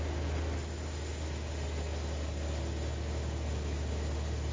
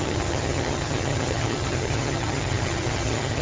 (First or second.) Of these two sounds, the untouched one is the first